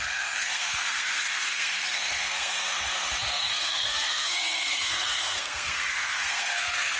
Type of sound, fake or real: fake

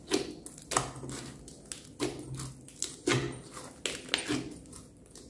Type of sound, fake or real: real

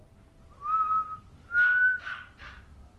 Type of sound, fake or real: real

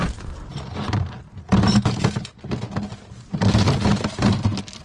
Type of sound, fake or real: real